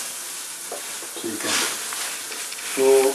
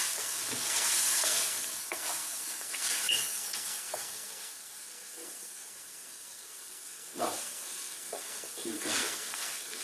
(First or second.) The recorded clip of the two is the first